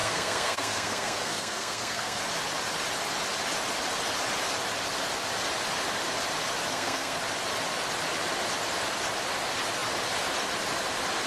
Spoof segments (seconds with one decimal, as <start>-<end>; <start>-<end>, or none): 0.0-2.2; 6.7-7.2

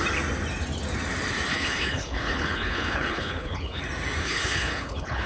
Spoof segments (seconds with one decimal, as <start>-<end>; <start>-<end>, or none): 1.5-3.8; 4.2-5.3

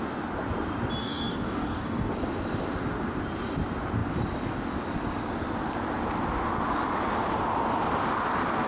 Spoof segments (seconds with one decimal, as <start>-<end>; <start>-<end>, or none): 1.0-2.1

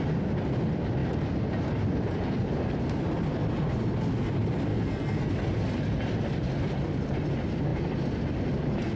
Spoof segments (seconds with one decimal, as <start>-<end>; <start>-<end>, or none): 4.7-5.3

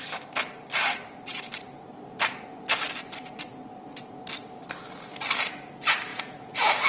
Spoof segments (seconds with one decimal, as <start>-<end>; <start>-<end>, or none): 6.1-6.9

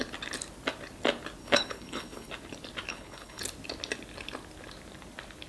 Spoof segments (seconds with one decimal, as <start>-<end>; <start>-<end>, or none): 1.4-2.3; 2.9-3.4

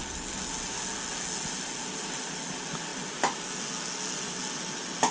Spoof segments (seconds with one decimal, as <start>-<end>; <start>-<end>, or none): none